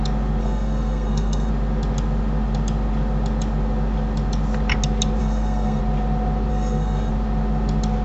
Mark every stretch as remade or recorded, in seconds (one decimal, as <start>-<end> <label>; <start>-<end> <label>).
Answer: 0.0-0.4 recorded; 0.4-1.5 remade; 1.5-5.2 recorded; 5.2-5.8 remade; 5.8-6.5 recorded; 6.5-7.1 remade; 7.1-8.0 recorded